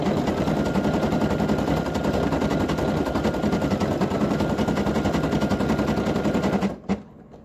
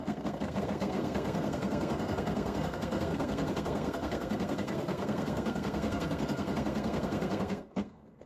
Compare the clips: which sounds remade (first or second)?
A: second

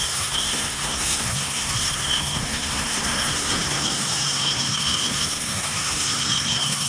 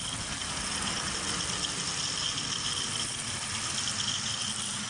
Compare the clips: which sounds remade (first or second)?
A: first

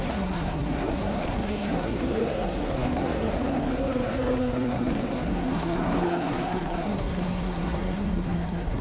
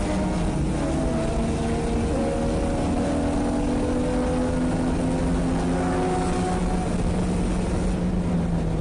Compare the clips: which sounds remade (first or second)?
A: first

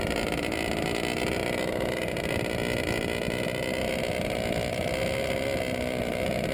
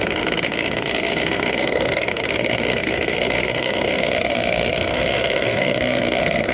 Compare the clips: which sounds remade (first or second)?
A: second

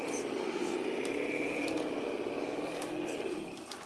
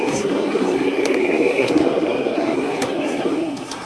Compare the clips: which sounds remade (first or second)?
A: second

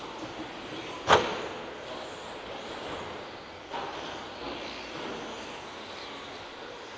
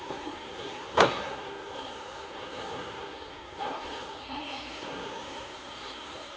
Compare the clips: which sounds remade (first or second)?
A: second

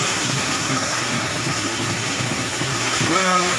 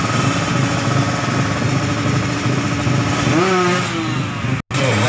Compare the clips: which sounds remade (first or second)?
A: first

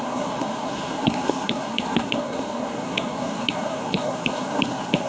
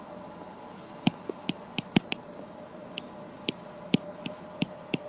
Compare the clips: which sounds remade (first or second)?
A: first